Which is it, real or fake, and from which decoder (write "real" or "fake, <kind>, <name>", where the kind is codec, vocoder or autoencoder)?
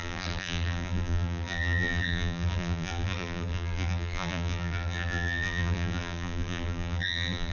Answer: fake, vocoder, BigVGAN v2